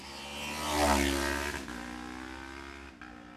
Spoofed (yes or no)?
no